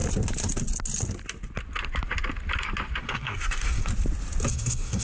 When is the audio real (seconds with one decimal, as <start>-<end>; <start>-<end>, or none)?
0.0-3.0; 3.9-4.5